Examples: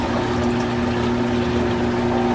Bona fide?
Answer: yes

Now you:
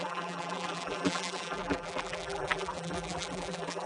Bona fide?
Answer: no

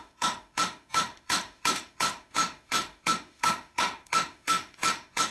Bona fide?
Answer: no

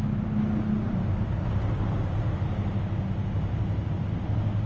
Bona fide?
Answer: yes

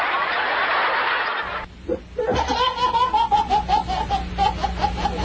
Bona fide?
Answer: yes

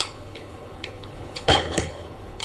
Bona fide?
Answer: no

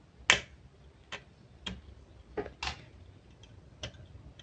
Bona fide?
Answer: yes